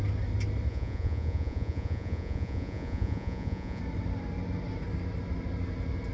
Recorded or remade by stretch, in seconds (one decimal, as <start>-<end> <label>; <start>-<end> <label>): 0.0-0.7 recorded; 0.7-3.8 remade; 3.8-6.1 recorded